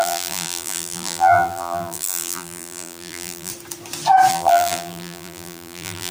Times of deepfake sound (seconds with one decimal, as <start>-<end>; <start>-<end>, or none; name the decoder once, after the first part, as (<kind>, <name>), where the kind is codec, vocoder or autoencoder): 0.0-3.5 (vocoder, BigVGAN v2); 4.3-6.1